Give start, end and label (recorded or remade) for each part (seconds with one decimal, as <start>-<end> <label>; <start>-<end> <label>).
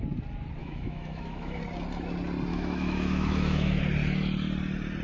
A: 0.0-0.6 recorded; 0.6-1.6 remade; 1.6-2.5 recorded; 2.5-3.8 remade; 3.8-5.0 recorded